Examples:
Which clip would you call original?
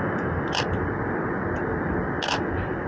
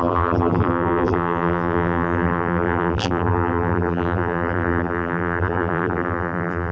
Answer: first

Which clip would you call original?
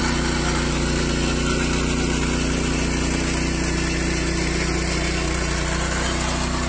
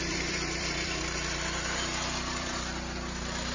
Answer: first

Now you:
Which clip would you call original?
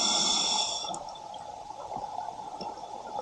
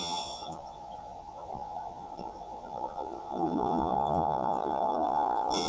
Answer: first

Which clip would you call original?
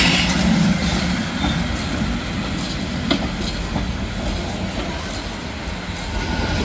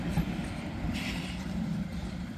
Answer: first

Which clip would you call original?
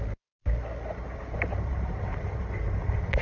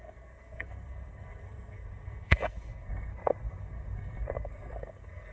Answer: first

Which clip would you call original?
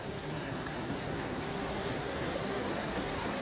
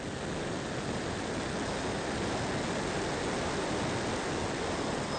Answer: second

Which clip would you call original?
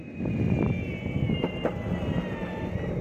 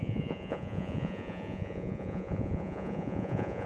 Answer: first